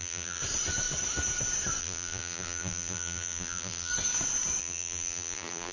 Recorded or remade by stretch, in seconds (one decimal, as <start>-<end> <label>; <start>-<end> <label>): 0.0-0.4 remade; 0.4-1.8 recorded; 1.8-3.9 remade; 3.9-4.6 recorded; 4.6-5.7 remade

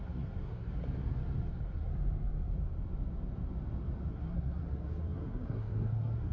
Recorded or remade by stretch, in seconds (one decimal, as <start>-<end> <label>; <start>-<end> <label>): 0.0-0.8 remade; 0.8-1.5 recorded; 1.5-1.9 remade; 1.9-4.1 recorded; 4.1-6.3 remade

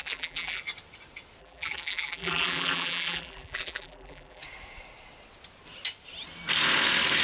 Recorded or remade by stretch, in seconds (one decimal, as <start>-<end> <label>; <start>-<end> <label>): 0.0-0.6 remade; 0.6-1.4 recorded; 1.4-4.4 remade; 4.4-7.2 recorded

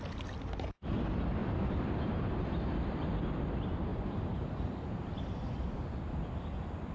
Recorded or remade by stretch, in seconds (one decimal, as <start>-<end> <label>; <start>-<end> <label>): 0.0-1.4 recorded; 1.4-2.6 remade; 2.6-3.9 recorded; 3.9-5.1 remade; 5.1-6.9 recorded

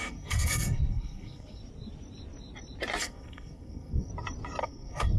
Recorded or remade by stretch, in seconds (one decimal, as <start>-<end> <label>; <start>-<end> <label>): 0.0-1.6 remade; 1.6-3.0 recorded; 3.0-4.1 remade; 4.1-4.6 recorded; 4.6-5.2 remade